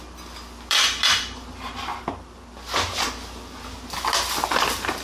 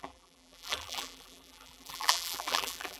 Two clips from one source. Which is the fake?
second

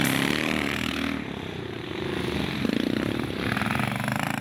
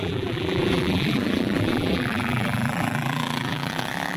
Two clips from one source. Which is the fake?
second